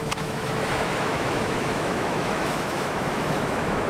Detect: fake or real fake